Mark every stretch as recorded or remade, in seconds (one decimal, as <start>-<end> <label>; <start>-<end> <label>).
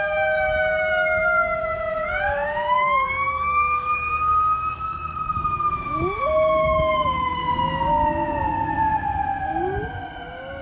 0.0-7.4 remade; 7.4-10.6 recorded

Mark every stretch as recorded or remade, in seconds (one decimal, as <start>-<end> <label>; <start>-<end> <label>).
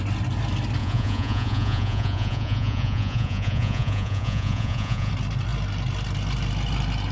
0.0-0.8 recorded; 0.8-5.1 remade; 5.1-7.1 recorded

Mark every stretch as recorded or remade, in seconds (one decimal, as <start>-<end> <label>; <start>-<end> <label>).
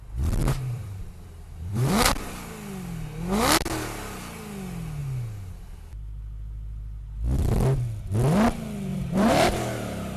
0.0-0.4 recorded; 0.4-1.9 remade; 1.9-8.9 recorded; 8.9-10.2 remade